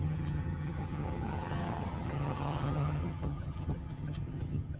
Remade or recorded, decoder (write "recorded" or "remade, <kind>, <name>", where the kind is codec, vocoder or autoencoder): remade, vocoder, HiFi-GAN